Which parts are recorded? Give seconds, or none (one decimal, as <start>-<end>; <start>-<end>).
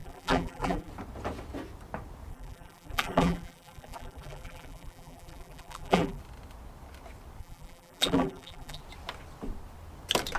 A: 0.9-2.3; 6.2-7.4; 8.8-10.4